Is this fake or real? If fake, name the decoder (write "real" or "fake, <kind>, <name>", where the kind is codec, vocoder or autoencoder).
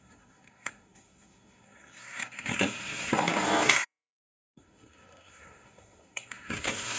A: fake, codec, SNAC